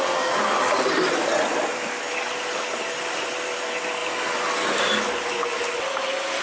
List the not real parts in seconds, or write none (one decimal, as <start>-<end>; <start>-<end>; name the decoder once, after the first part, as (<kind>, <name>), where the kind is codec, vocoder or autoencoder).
5.5-6.4 (vocoder, BigVGAN v2)